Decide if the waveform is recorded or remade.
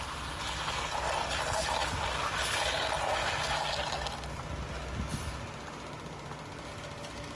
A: recorded